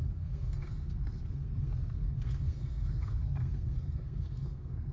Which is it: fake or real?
fake